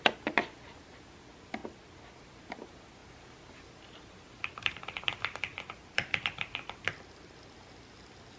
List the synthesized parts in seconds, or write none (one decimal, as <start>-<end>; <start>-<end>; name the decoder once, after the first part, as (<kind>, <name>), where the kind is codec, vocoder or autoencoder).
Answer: none